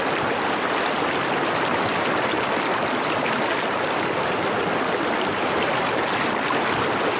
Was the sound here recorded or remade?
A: recorded